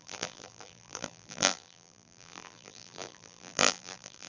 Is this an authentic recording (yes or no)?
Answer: no